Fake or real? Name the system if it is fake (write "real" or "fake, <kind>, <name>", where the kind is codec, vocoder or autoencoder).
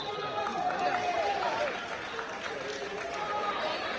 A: real